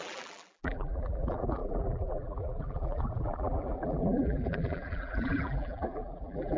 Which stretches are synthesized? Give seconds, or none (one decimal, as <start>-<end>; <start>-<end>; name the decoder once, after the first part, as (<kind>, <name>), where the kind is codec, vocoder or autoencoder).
0.0-6.6 (vocoder, BigVGAN v2)